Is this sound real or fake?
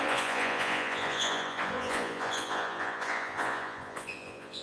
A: fake